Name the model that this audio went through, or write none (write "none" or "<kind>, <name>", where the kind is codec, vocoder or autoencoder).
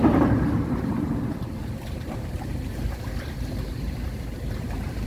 vocoder, BigVGAN v2